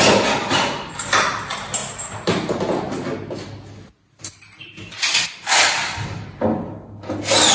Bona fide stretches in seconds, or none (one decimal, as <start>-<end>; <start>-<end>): 0.0-7.5